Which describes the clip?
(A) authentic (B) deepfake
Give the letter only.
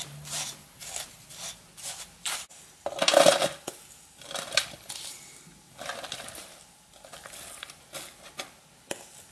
A